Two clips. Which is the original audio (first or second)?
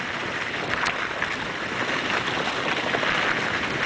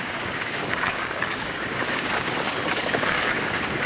first